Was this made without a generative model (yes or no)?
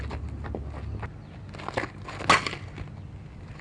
yes